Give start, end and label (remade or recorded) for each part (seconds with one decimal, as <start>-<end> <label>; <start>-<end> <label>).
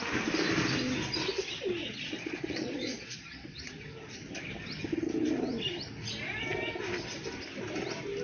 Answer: 0.0-1.8 recorded; 1.8-3.6 remade; 3.6-8.2 recorded